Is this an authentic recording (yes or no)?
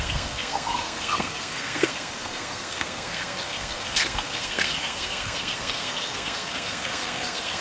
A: no